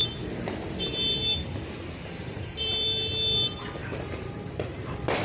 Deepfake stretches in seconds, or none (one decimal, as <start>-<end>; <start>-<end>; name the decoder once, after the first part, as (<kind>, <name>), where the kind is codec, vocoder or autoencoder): 0.0-3.1 (vocoder, BigVGAN v2); 3.8-4.8